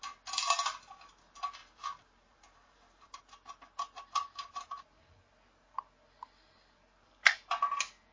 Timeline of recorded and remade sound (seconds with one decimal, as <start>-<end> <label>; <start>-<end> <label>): 0.0-1.6 recorded; 1.6-3.2 remade; 3.2-8.1 recorded